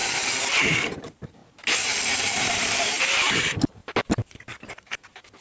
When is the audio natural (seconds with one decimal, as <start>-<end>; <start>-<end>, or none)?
0.0-0.6; 1.4-2.1